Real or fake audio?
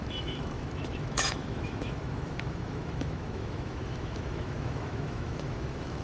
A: fake